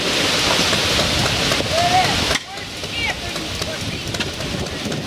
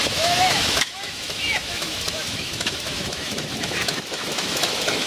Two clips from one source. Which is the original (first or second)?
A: first